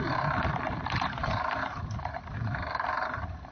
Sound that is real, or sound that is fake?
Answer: fake